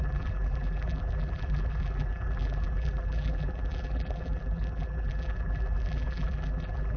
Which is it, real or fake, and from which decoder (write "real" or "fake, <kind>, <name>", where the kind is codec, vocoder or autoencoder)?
fake, vocoder, BigVGAN v2